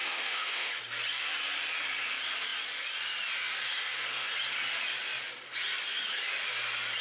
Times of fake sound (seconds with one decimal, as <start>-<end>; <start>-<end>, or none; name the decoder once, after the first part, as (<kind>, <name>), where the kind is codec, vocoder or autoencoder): 0.0-0.7 (autoencoder, DAC-VAE)